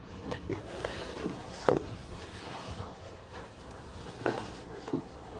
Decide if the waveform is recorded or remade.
remade